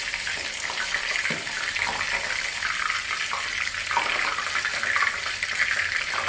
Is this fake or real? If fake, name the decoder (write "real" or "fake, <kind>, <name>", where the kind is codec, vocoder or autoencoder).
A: real